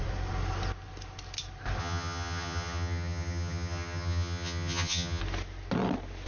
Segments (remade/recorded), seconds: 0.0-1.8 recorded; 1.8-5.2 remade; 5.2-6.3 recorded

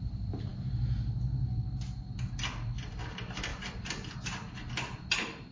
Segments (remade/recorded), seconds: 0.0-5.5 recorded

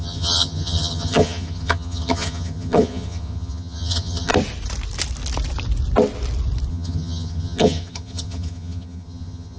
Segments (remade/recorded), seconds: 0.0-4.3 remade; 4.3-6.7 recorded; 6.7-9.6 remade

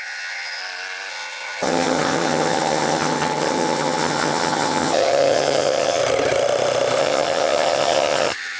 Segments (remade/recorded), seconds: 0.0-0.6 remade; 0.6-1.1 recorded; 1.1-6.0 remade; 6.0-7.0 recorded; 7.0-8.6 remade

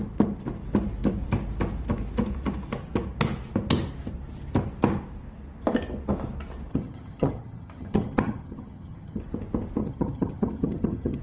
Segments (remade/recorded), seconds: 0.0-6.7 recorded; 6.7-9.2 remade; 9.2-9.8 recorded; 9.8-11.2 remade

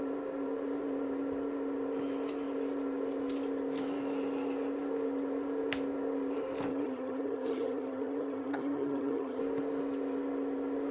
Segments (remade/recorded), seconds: 0.0-6.7 recorded; 6.7-9.4 remade; 9.4-10.9 recorded